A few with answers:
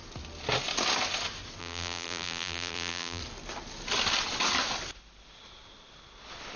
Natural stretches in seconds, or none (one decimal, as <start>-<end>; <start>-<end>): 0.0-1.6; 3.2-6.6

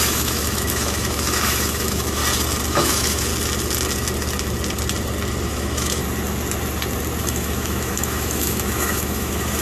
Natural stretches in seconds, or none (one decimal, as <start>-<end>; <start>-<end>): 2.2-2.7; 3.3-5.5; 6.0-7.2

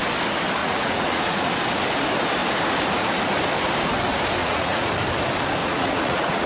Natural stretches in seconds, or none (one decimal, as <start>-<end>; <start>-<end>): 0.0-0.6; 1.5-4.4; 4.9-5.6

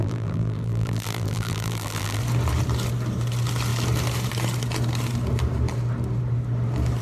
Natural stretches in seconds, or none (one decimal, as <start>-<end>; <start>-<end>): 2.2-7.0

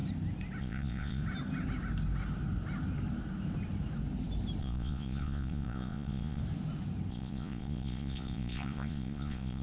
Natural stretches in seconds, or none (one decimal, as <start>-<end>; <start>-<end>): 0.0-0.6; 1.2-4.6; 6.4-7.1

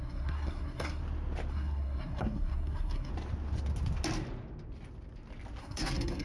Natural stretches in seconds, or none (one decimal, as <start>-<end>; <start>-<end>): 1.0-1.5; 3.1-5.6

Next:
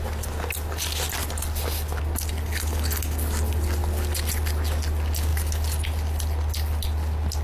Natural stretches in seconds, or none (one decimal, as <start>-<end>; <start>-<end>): 0.0-7.4